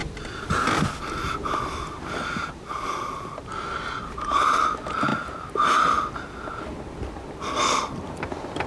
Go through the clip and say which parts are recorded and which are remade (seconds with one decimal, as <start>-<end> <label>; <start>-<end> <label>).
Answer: 0.0-8.7 recorded